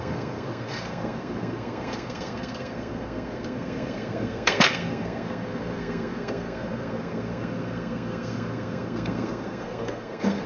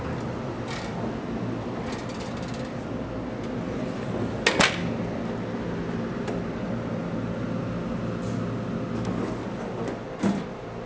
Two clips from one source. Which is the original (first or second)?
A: second